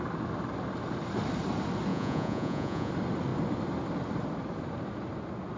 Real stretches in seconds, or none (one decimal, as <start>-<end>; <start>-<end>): 0.0-1.9; 2.9-5.6